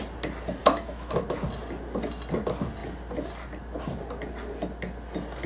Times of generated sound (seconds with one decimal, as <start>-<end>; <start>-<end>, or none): 0.6-1.2